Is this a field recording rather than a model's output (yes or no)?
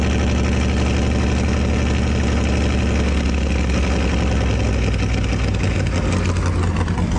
yes